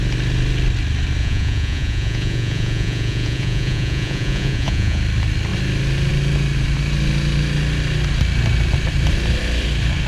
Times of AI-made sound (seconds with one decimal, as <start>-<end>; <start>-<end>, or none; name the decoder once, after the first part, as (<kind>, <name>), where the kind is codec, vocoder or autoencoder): 1.2-5.0 (vocoder, Vocos)

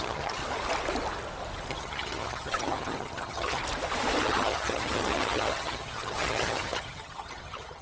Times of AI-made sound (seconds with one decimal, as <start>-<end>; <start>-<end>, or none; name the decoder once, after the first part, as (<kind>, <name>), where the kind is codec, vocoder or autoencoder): 0.0-0.4 (vocoder, HiFi-GAN); 1.7-3.6; 4.2-7.8